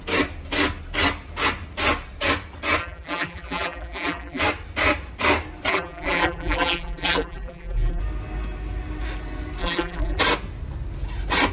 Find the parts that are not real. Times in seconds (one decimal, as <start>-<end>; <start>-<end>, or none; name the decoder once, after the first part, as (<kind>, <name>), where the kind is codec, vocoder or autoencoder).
2.8-4.4 (vocoder, BigVGAN v2); 5.7-8.0; 9.6-10.2